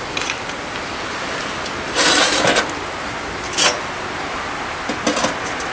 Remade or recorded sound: recorded